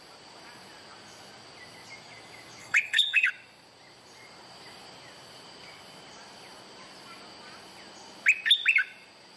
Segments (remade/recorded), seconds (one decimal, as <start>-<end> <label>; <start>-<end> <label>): 0.0-2.6 recorded; 2.6-3.3 remade; 3.3-9.4 recorded